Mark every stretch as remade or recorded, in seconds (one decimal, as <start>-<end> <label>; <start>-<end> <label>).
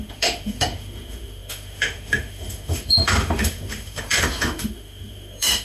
0.0-5.6 remade